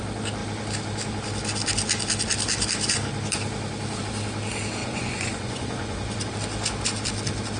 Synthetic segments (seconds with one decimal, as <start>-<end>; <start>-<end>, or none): 4.8-6.3